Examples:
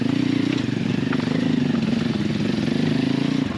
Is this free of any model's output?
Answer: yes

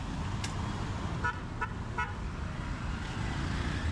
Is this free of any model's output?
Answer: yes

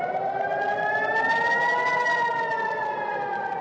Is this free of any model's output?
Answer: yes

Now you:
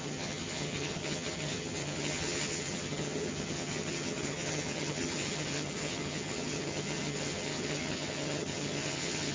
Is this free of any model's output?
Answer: no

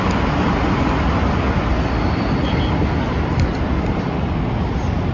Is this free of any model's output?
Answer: yes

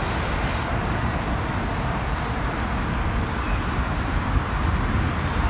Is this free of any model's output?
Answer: yes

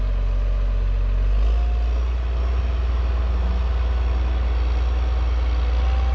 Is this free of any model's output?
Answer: yes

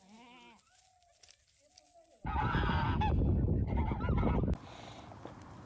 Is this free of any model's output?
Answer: yes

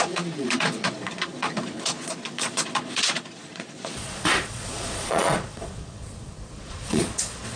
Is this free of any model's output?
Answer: no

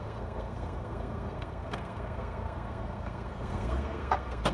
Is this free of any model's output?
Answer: no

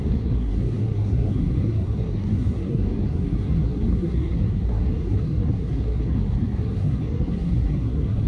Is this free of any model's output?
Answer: no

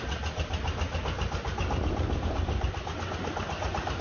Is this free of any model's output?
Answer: yes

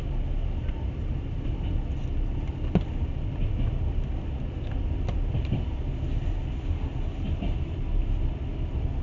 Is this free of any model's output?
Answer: yes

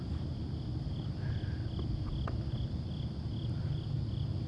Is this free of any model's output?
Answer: yes